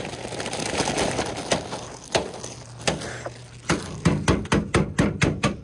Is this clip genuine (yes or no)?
yes